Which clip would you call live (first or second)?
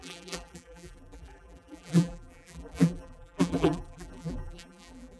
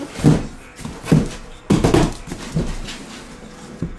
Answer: second